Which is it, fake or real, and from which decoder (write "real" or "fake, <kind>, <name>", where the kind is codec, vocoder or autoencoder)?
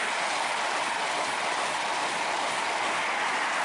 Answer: real